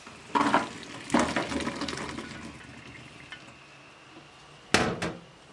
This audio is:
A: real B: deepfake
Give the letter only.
A